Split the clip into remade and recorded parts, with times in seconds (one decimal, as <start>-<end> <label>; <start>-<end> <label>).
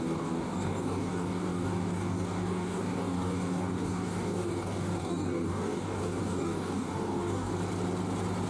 0.0-7.5 remade; 7.5-8.5 recorded